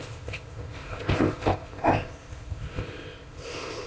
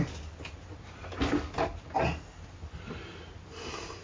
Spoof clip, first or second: first